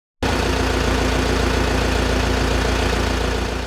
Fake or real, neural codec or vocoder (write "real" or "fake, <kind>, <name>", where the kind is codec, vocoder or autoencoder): real